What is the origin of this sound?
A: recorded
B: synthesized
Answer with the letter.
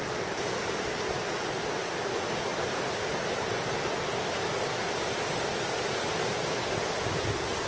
A